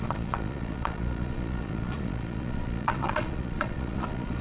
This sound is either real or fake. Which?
fake